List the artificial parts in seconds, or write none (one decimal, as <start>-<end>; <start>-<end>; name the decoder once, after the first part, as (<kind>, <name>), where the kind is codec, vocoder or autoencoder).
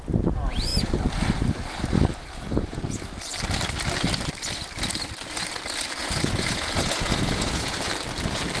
6.0-7.9 (vocoder, Vocos)